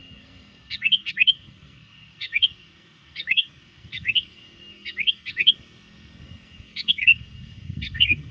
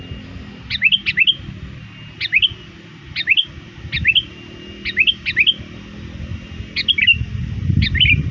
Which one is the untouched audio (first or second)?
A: second